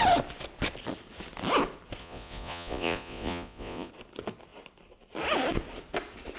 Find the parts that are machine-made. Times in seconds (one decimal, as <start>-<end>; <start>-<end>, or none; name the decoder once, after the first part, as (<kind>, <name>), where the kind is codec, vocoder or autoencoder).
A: 2.0-3.9 (vocoder, Vocos)